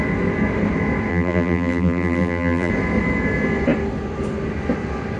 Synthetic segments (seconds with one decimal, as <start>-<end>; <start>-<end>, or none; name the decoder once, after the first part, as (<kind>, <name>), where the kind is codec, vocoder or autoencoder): 1.1-2.7 (vocoder, BigVGAN v2)